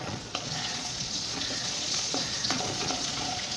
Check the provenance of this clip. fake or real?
fake